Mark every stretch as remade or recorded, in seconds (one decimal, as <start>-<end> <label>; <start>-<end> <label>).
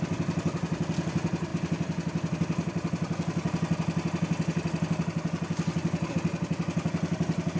0.0-7.6 recorded